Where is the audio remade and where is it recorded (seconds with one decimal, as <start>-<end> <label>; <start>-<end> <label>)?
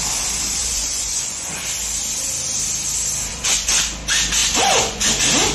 0.0-0.6 recorded; 0.6-1.6 remade; 1.6-3.3 recorded; 3.3-3.8 remade; 3.8-4.4 recorded; 4.4-5.1 remade; 5.1-5.5 recorded